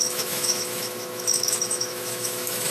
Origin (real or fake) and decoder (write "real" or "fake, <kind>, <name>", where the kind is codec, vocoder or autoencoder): fake, autoencoder, DAC-VAE